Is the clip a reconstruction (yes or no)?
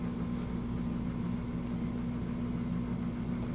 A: no